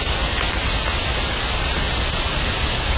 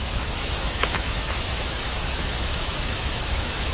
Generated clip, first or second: second